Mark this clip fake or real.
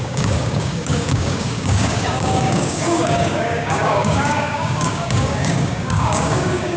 fake